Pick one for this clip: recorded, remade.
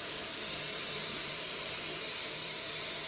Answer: remade